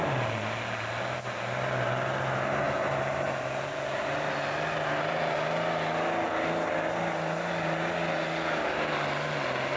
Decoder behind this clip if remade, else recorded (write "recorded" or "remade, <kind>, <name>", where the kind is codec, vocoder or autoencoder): recorded